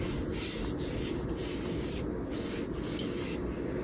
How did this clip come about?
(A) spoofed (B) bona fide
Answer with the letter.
B